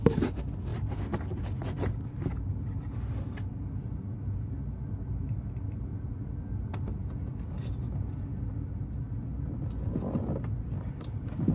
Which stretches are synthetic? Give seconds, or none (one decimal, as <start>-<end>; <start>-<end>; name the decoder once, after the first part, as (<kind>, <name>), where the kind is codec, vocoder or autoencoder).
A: none